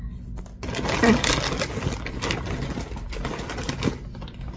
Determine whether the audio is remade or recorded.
recorded